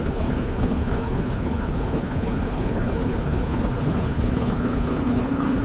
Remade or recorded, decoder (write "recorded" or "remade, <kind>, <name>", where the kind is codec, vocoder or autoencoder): remade, codec, HILCodec